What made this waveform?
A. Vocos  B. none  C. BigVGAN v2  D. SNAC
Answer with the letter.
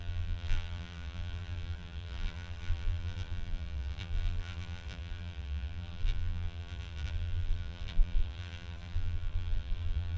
C